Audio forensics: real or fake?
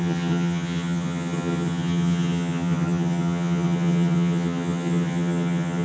fake